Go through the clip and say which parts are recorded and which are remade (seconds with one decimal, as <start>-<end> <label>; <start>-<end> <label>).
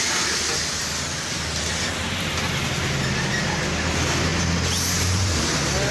0.0-4.3 recorded; 4.3-5.4 remade; 5.4-5.9 recorded